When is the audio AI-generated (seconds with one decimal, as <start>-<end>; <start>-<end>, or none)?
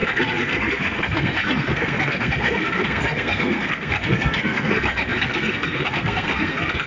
0.0-6.9